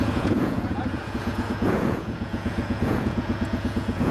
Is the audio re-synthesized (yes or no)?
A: yes